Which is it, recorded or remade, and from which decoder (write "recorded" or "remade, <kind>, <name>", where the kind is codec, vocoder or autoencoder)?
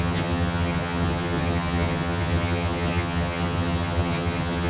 remade, vocoder, HiFi-GAN